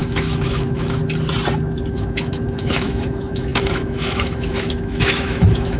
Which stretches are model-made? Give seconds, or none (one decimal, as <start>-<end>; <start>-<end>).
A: 0.0-1.0; 1.9-5.8